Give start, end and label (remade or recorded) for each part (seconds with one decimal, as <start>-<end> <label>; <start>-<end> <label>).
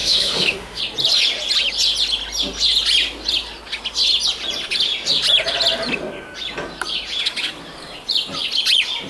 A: 0.0-0.8 remade; 0.8-9.1 recorded